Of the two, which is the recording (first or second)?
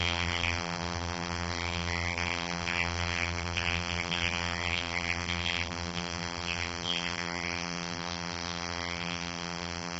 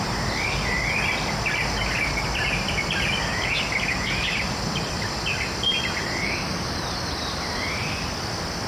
second